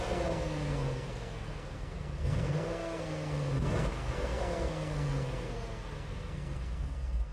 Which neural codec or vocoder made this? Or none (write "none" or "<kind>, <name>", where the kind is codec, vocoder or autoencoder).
codec, SNAC